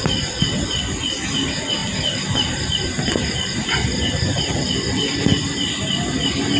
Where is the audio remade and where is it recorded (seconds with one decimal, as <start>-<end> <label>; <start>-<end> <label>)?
0.0-6.6 recorded